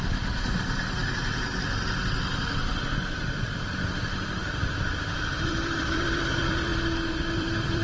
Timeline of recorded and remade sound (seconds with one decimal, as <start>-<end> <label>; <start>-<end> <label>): 0.0-1.0 remade; 1.0-3.4 recorded; 3.4-4.4 remade; 4.4-5.1 recorded; 5.1-6.7 remade; 6.7-7.2 recorded; 7.2-7.8 remade